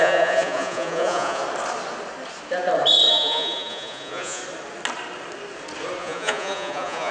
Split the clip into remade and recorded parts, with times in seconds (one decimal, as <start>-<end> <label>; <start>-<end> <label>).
0.0-1.4 remade; 1.4-3.1 recorded; 3.1-4.4 remade; 4.4-6.0 recorded; 6.0-7.1 remade